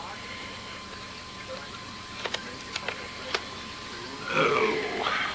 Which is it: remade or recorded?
recorded